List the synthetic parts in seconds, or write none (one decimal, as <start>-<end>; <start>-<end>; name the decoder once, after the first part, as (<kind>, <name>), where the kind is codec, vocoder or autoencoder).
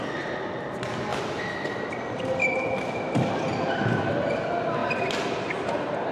none